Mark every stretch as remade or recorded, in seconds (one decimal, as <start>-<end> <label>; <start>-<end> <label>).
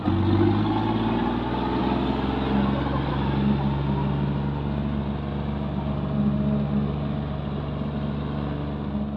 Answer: 0.0-9.2 recorded